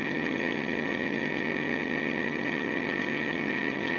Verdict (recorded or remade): remade